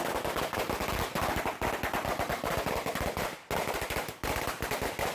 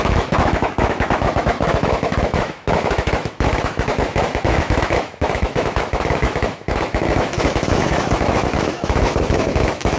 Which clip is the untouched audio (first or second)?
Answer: first